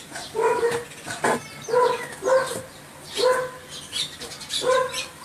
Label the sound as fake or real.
real